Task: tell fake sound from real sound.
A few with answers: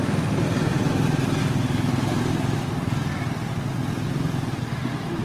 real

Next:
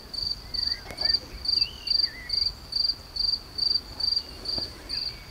real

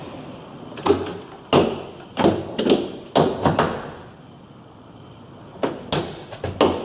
real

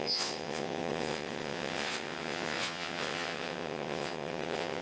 fake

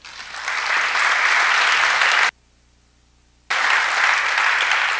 real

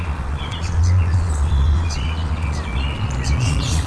fake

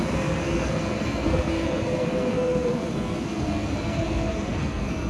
fake